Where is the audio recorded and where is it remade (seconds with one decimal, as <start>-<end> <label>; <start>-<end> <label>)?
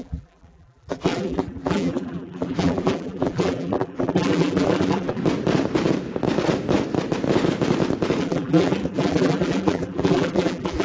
0.0-5.2 remade; 5.2-8.2 recorded; 8.2-10.8 remade